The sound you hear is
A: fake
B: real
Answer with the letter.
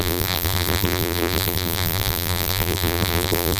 A